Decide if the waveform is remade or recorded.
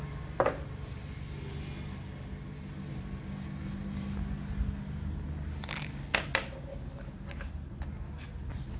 recorded